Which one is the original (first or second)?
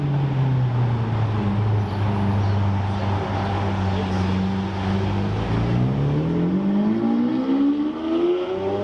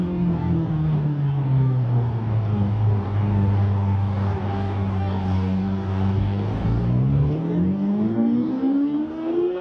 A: first